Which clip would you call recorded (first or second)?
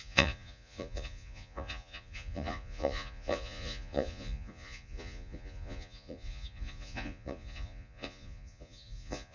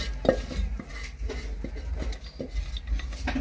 second